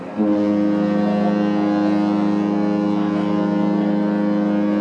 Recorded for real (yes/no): yes